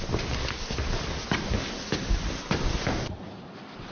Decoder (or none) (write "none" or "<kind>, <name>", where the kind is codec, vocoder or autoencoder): none